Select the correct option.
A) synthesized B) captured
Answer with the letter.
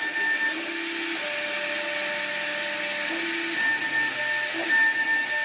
B